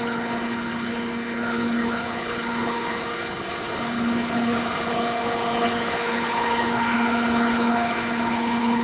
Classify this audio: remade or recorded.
remade